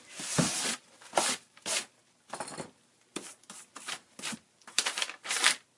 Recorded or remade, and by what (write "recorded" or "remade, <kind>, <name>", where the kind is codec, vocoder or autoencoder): remade, vocoder, BigVGAN v2